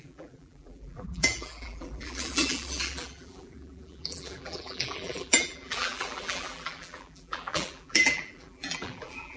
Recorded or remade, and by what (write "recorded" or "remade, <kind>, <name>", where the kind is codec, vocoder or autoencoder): remade, vocoder, BigVGAN v2